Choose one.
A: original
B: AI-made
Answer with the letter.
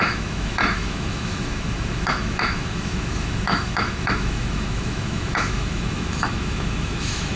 B